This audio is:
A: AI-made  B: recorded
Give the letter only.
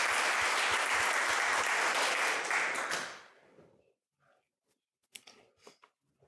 B